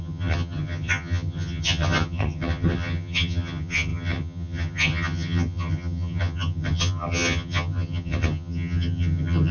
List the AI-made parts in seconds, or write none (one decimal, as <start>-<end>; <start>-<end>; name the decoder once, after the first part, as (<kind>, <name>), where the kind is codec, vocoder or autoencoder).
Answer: 0.0-9.5 (vocoder, HiFi-GAN)